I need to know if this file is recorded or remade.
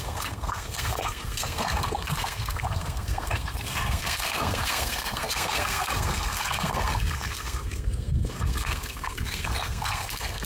remade